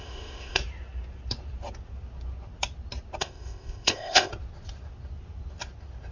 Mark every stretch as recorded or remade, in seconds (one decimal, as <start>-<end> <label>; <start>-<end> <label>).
0.0-0.6 remade; 0.6-3.2 recorded; 3.2-4.3 remade; 4.3-6.1 recorded